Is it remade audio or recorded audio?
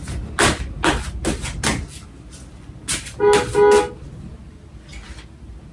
recorded